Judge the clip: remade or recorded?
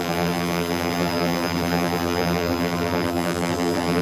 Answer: remade